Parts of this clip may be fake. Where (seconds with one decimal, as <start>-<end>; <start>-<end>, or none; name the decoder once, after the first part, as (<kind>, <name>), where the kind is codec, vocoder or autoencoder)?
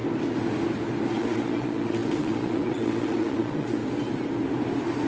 1.1-3.8 (vocoder, Vocos)